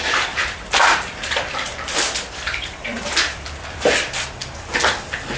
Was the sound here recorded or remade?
remade